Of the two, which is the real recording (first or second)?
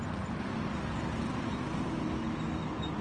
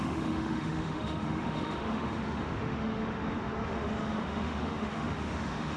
first